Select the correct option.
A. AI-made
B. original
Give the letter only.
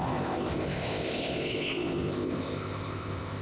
A